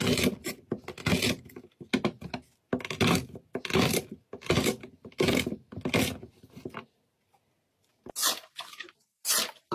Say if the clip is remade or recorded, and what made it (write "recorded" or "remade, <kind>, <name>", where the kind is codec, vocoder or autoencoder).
recorded